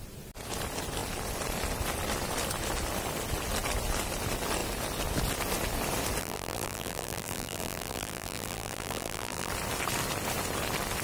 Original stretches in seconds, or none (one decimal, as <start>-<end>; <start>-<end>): 0.0-6.2; 9.5-11.0